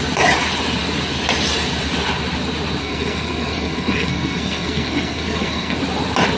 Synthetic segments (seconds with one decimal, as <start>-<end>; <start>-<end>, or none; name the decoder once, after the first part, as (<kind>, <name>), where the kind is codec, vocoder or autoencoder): 2.8-5.8 (codec, SNAC)